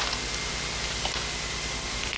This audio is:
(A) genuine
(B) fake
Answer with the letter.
A